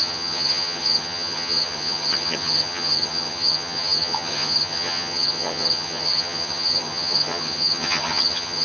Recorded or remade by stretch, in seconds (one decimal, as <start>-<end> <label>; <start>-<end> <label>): 0.0-8.6 remade